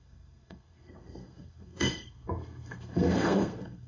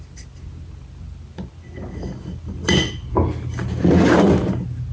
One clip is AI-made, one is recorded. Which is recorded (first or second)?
second